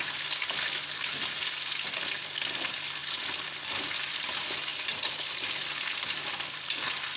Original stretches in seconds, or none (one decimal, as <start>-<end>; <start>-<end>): 0.0-7.2